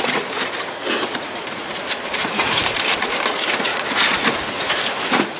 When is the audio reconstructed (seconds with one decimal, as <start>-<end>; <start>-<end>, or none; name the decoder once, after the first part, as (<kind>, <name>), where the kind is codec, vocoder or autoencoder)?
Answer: 0.0-2.6 (vocoder, Vocos); 3.3-5.4